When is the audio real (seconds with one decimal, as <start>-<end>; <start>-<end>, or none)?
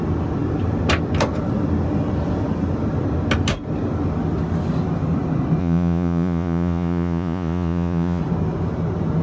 0.0-5.6; 8.2-9.2